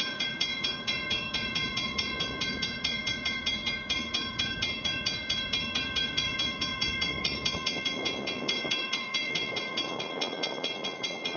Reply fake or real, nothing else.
fake